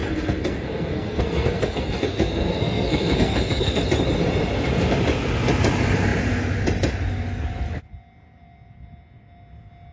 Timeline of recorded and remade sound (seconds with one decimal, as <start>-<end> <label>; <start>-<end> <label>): 0.0-3.8 remade; 3.8-9.9 recorded